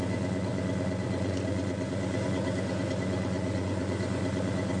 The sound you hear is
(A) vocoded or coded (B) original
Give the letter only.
A